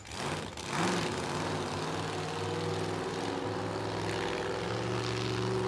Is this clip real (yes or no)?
yes